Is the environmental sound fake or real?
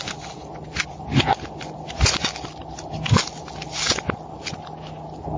real